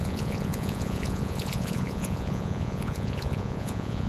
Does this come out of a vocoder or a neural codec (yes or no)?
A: yes